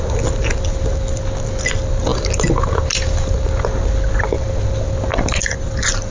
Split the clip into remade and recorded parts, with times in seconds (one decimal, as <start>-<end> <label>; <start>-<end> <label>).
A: 0.0-6.1 recorded